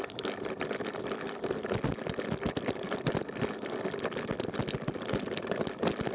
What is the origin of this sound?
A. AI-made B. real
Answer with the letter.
B